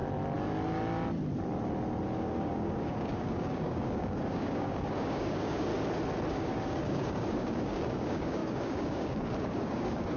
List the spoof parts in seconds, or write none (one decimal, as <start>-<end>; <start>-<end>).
2.2-5.7; 6.3-10.2